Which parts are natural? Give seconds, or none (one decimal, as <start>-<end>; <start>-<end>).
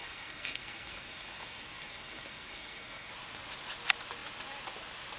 3.1-5.2